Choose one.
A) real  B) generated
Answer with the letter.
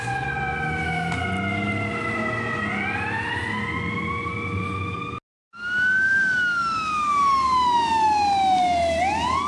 A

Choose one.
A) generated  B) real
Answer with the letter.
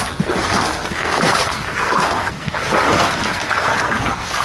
A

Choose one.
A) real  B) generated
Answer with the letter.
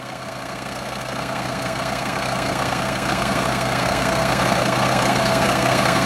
B